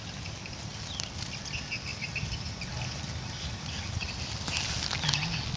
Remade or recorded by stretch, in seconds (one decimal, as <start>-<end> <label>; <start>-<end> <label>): 0.0-5.6 recorded